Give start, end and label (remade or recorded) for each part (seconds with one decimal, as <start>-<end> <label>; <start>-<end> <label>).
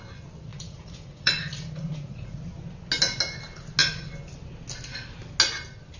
0.0-0.5 recorded; 0.5-2.4 remade; 2.4-6.0 recorded